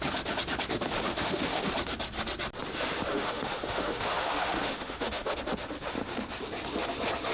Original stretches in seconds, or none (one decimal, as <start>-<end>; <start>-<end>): 0.0-1.1; 1.7-3.1; 5.4-7.3